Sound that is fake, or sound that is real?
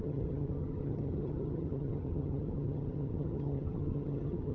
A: fake